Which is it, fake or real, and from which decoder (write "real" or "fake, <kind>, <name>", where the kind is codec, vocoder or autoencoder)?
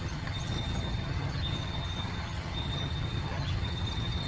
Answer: fake, vocoder, HiFi-GAN